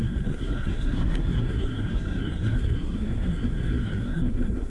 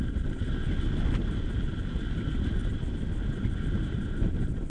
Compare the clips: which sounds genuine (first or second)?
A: second